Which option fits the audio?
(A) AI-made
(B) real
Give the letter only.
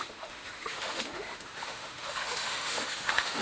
A